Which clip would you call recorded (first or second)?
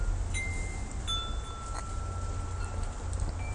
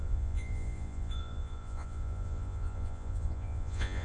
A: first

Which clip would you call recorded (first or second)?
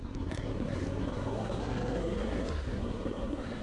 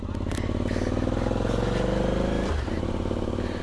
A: second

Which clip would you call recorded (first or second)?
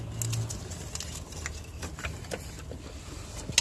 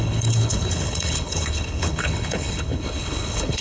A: first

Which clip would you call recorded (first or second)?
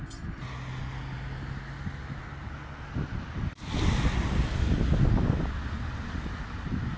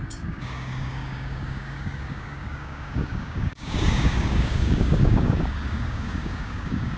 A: first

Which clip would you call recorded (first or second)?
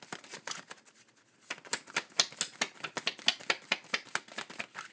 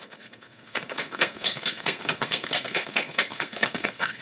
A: first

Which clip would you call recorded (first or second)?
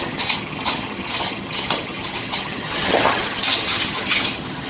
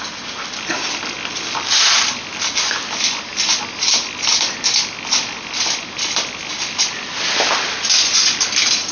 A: second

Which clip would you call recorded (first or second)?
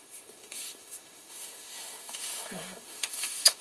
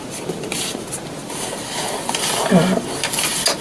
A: second